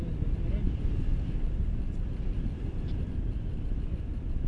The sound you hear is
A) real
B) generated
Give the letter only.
A